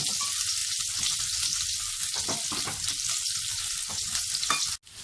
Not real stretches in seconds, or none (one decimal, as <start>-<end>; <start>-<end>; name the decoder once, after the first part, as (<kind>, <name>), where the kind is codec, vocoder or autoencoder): none